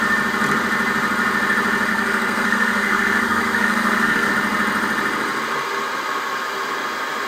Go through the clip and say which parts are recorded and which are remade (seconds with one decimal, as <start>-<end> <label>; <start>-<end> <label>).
0.0-1.9 recorded; 1.9-4.3 remade; 4.3-7.3 recorded